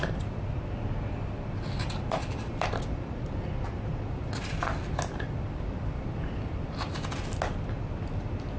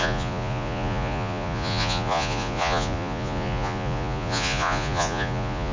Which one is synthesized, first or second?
second